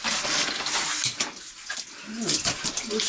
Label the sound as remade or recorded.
recorded